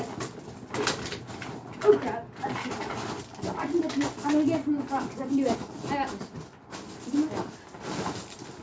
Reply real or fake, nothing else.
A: real